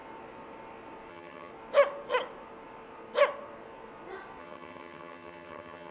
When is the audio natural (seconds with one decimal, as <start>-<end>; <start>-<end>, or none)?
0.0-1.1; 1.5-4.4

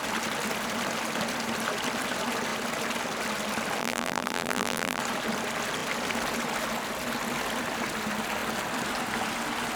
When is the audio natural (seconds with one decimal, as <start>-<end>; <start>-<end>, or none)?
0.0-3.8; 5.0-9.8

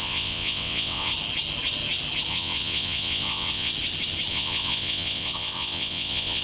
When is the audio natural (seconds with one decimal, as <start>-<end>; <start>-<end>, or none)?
1.1-2.3; 3.7-4.3

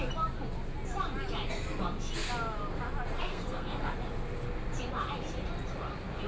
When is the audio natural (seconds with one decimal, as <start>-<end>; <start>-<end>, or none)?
0.0-3.2; 3.9-6.3